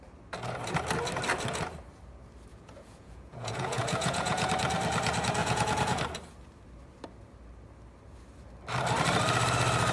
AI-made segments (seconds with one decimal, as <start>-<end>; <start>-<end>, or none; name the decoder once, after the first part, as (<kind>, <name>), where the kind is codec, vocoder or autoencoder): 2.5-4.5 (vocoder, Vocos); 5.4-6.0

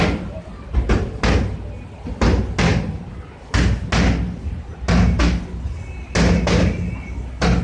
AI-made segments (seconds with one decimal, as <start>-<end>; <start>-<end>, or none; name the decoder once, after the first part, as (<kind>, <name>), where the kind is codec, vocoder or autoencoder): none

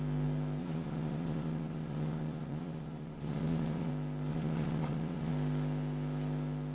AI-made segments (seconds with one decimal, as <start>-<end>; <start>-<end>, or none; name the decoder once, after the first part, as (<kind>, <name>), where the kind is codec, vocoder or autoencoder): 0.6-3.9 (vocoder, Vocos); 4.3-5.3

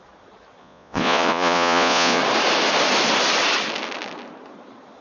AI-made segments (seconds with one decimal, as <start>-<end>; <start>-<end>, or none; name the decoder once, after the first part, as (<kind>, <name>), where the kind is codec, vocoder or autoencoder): 0.6-2.2 (vocoder, Vocos)

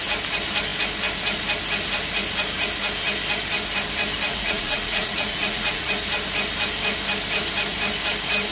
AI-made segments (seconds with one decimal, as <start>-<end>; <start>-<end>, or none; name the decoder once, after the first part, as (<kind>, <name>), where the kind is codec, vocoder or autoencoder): 4.3-5.9 (vocoder, Vocos)

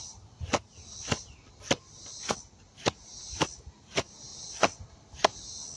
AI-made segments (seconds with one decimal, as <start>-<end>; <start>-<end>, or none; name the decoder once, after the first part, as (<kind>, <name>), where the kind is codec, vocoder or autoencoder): none

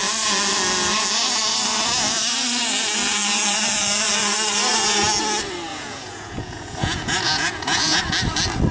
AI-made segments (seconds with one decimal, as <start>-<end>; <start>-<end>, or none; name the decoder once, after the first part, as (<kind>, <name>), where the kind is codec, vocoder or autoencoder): 5.7-8.0 (vocoder, Vocos)

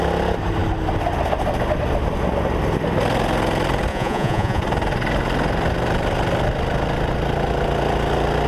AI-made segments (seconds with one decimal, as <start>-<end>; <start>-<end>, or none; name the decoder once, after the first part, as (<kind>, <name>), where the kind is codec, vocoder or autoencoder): 3.9-4.6 (vocoder, Vocos)